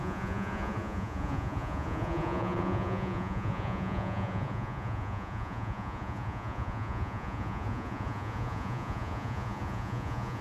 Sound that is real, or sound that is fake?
fake